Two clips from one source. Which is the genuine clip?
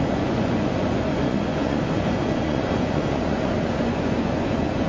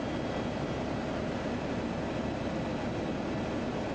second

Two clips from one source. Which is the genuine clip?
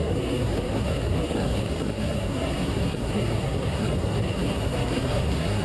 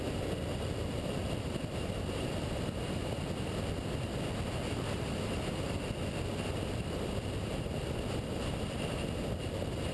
second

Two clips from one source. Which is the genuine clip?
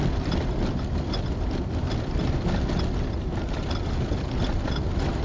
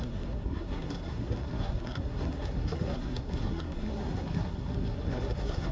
first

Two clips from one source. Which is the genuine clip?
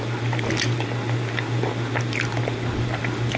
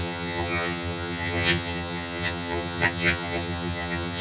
first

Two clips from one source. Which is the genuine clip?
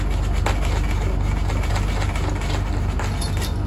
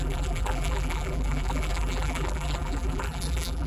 first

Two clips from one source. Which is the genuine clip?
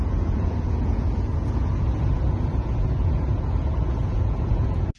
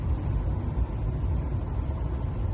second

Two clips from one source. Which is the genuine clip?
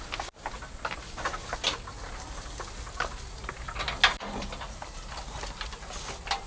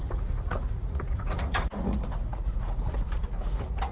first